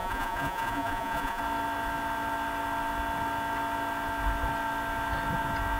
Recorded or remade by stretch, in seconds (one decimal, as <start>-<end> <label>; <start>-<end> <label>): 0.0-1.4 remade; 1.4-5.8 recorded

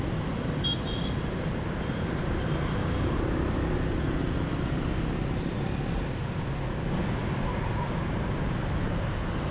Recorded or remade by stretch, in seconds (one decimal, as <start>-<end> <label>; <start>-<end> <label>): 0.0-9.5 recorded

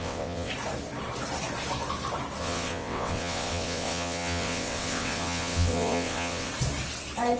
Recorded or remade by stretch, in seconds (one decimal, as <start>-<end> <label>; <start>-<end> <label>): 0.0-0.5 remade; 0.5-2.4 recorded; 2.4-6.5 remade; 6.5-7.4 recorded

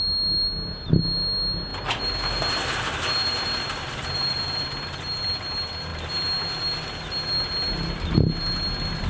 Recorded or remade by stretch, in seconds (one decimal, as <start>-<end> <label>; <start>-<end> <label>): 0.0-1.7 recorded; 1.7-5.0 remade; 5.0-9.1 recorded